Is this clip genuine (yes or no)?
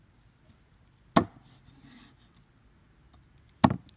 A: yes